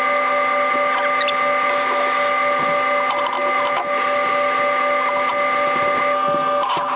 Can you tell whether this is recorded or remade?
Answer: recorded